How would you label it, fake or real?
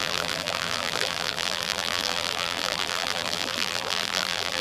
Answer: fake